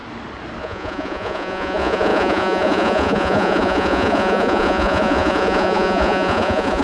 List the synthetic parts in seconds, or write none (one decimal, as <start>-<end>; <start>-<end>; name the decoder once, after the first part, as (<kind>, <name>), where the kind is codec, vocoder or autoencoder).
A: 0.6-6.8 (vocoder, Vocos)